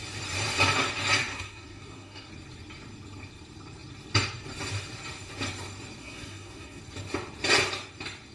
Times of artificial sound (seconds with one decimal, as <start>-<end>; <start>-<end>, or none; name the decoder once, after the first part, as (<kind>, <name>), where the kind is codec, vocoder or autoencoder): 1.3-2.3 (codec, SNAC); 6.0-6.8